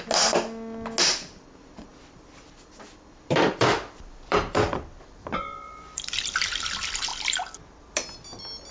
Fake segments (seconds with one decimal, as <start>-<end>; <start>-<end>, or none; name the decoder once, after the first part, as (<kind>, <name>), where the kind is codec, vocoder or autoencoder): 1.9-6.5 (vocoder, BigVGAN v2)